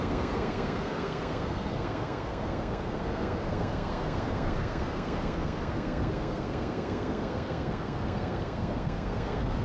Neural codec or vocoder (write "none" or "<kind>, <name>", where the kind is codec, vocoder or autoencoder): codec, SNAC